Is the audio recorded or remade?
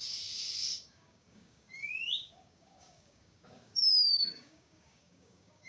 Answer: remade